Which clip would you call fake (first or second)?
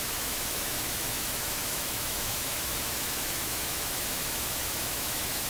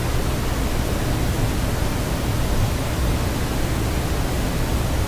first